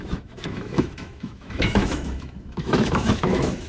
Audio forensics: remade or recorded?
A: remade